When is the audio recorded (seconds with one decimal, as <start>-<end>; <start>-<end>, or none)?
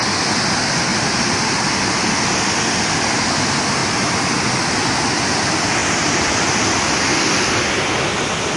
0.0-3.8; 4.4-8.6